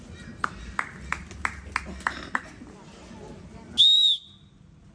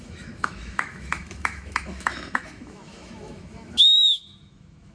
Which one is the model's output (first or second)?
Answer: second